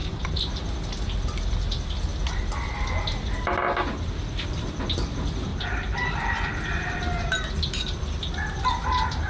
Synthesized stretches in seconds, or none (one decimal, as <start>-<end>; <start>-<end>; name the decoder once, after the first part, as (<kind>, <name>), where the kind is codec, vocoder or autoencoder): 0.0-0.6 (vocoder, BigVGAN v2)